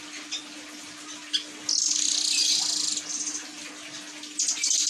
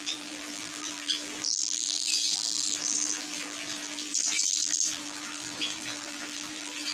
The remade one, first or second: second